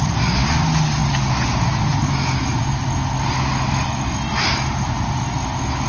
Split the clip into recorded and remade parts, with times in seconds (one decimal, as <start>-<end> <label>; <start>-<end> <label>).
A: 0.0-5.9 recorded